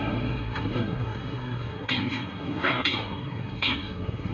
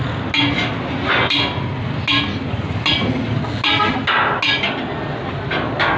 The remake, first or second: first